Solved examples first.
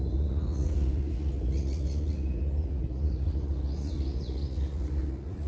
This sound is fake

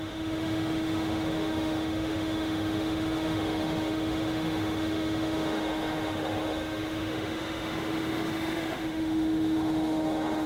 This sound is fake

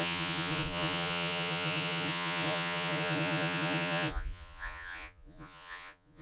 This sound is fake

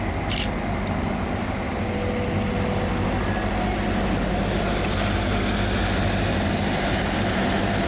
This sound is real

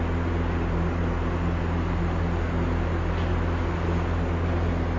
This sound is real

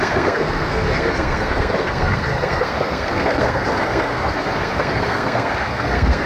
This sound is fake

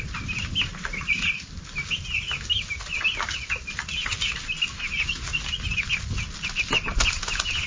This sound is real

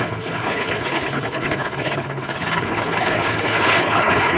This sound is fake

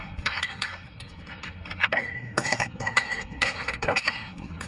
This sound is fake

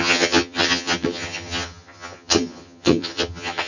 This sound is fake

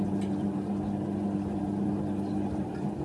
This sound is fake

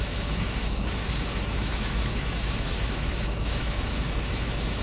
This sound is fake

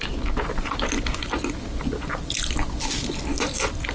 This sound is real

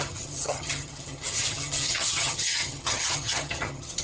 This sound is fake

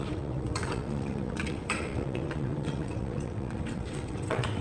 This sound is fake